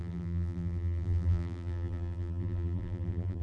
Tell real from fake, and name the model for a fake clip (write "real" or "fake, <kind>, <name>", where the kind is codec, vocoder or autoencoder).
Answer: fake, vocoder, BigVGAN v2